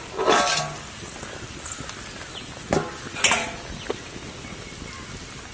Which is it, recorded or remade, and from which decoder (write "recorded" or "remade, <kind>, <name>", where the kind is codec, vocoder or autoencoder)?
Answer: recorded